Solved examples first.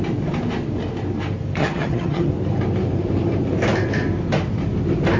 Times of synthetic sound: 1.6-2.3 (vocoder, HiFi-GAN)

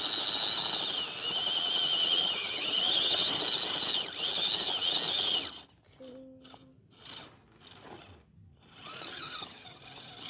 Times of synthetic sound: 2.2-3.4 (vocoder, HiFi-GAN); 9.1-9.8

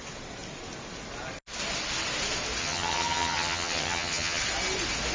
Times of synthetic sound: 2.6-4.4 (vocoder, HiFi-GAN)